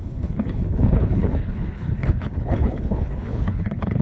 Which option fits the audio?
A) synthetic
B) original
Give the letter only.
A